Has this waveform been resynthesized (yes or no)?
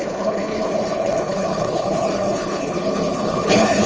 yes